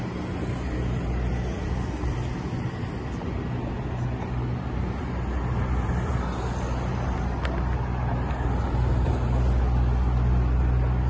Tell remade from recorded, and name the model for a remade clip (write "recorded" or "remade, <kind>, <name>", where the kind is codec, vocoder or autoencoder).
recorded